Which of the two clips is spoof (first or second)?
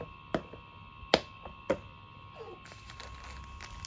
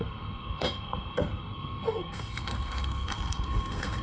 second